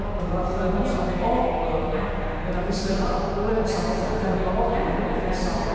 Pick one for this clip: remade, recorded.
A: recorded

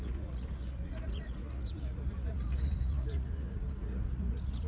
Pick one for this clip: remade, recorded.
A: remade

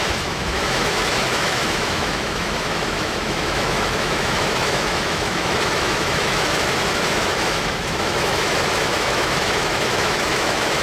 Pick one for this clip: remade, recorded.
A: remade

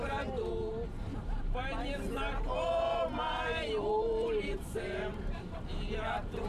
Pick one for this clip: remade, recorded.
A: remade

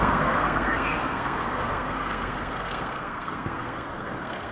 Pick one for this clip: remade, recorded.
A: remade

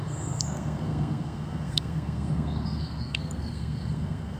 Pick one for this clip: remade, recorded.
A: remade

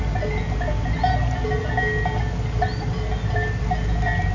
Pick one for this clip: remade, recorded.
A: recorded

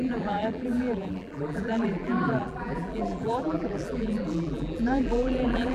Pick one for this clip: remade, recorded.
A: remade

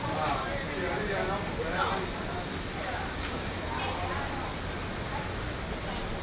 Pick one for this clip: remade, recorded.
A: recorded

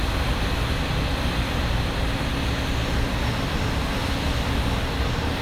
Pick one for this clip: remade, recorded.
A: recorded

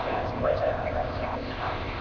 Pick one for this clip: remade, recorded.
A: remade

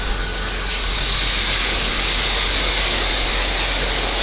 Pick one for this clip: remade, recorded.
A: remade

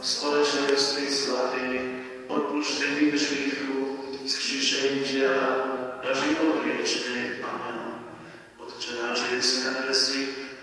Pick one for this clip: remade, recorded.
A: remade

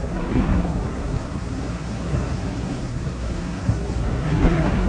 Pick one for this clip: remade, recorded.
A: remade